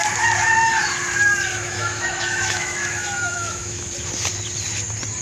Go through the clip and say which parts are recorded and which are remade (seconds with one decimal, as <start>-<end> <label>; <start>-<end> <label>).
0.0-1.5 recorded; 1.5-3.9 remade; 3.9-5.2 recorded

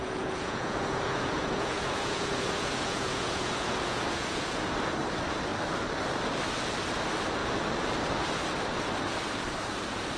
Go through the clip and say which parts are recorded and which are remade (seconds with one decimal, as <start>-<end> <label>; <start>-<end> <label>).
0.0-4.7 remade; 4.7-10.2 recorded

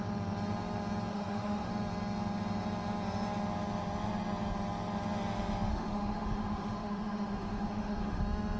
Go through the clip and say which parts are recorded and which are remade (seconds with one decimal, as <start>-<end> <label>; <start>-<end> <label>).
0.0-1.1 recorded; 1.1-1.7 remade; 1.7-5.7 recorded; 5.7-8.2 remade; 8.2-8.6 recorded

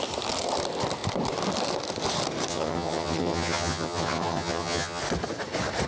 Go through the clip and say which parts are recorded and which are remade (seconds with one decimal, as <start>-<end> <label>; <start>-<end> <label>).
0.0-2.5 recorded; 2.5-5.0 remade; 5.0-5.9 recorded

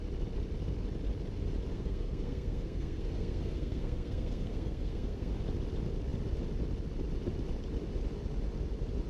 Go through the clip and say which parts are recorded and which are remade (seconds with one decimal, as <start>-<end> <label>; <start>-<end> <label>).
0.0-1.7 recorded; 1.7-5.3 remade; 5.3-9.1 recorded

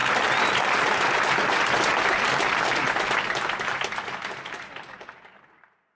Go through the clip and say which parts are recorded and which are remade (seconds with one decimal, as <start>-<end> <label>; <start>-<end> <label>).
0.0-1.1 remade; 1.1-5.9 recorded

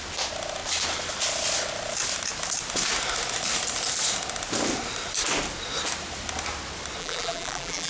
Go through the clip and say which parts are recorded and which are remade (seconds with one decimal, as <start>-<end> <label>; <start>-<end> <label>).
0.0-7.0 recorded; 7.0-7.9 remade